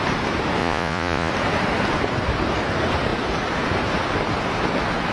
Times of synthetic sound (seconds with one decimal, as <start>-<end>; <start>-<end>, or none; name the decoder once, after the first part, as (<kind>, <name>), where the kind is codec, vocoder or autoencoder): 0.6-1.3 (vocoder, Vocos)